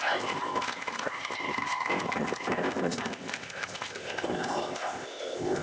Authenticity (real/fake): fake